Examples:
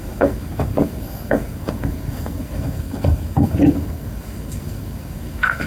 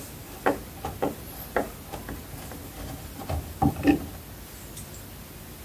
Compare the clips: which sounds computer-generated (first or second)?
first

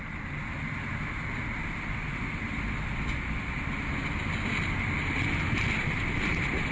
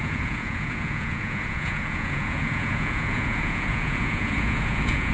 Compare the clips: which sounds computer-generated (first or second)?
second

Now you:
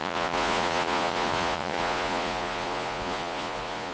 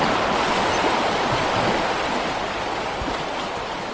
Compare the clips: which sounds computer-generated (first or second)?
first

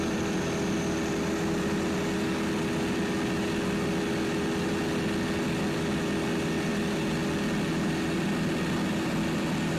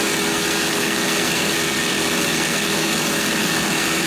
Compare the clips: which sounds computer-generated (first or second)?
second